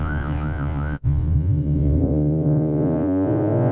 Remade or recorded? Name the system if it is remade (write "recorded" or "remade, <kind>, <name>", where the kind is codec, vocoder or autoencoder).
remade, vocoder, Vocos